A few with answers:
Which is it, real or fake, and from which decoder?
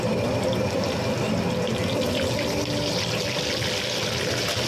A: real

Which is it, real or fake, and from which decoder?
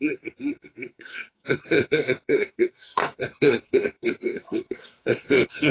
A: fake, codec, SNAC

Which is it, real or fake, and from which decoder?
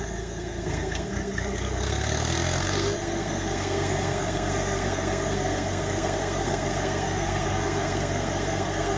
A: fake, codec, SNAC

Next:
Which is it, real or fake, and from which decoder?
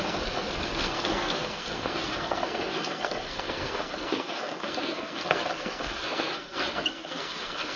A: fake, codec, SNAC